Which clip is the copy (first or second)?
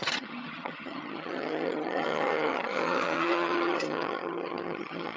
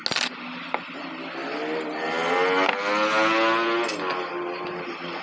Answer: first